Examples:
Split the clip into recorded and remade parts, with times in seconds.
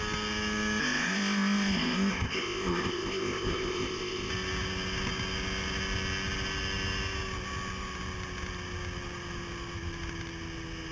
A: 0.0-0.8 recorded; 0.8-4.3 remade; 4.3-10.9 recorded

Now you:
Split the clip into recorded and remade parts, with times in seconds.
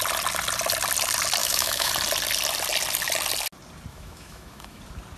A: 0.0-1.4 recorded; 1.4-1.9 remade; 1.9-3.9 recorded; 3.9-4.8 remade; 4.8-5.2 recorded